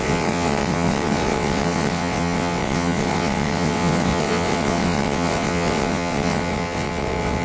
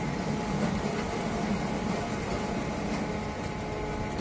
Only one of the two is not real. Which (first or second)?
first